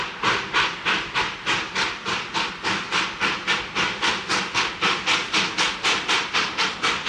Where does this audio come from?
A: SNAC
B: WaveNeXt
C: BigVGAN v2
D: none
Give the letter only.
D